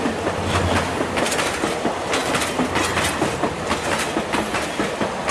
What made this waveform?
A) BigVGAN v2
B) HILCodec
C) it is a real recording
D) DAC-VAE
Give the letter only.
C